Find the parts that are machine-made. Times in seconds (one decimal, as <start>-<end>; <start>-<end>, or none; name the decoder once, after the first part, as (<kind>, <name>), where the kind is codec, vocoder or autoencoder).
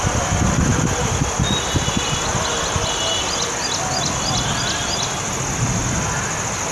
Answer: none